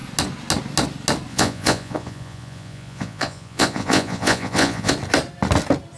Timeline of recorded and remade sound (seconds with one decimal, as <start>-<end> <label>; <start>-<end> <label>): 0.0-1.3 recorded; 1.3-4.9 remade; 4.9-6.0 recorded